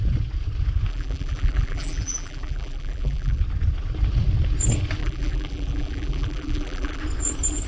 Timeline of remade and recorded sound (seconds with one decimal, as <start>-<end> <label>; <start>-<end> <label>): 0.0-0.9 recorded; 0.9-3.4 remade; 3.4-5.0 recorded; 5.0-7.0 remade; 7.0-7.7 recorded